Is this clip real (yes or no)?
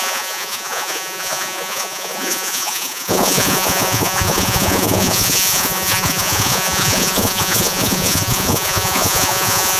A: no